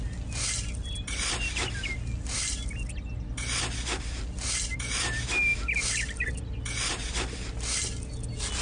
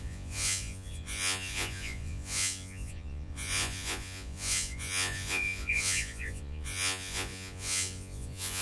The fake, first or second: second